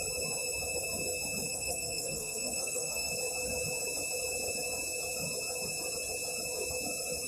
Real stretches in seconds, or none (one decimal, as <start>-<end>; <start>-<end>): 0.0-1.5; 3.1-7.3